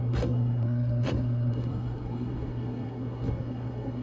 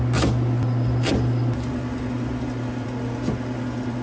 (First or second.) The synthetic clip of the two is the first